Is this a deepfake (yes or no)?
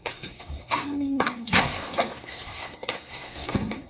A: yes